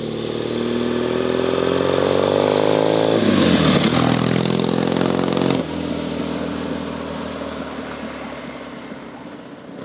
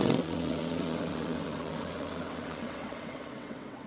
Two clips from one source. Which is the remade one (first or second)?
second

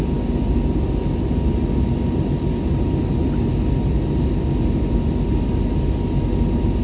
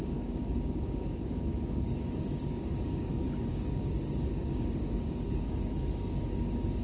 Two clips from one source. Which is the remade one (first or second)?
second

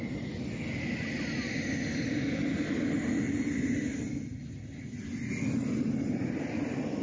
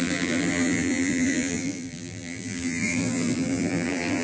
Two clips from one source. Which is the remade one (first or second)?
second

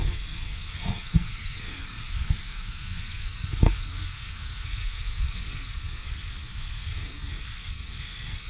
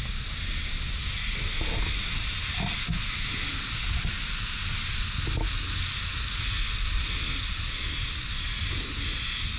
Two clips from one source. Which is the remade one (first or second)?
first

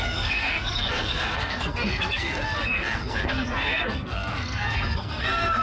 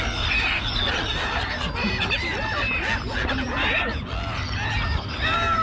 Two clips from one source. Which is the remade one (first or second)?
first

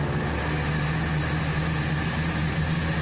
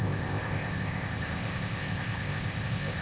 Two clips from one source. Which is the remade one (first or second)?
second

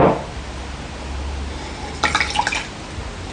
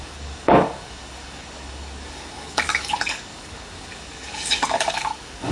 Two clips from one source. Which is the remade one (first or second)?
second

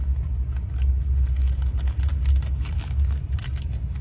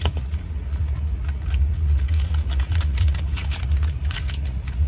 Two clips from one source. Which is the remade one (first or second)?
second